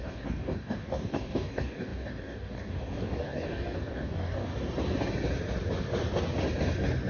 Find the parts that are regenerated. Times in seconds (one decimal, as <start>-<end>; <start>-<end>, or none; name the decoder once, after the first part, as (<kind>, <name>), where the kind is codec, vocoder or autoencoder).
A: 0.0-4.5 (codec, DAC)